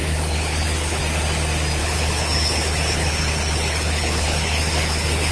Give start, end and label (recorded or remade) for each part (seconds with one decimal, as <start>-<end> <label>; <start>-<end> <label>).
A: 0.0-1.0 remade; 1.0-1.8 recorded; 1.8-5.3 remade